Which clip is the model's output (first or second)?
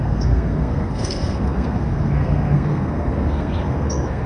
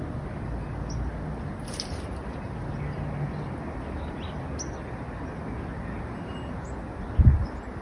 first